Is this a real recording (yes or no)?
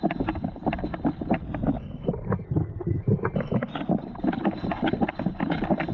yes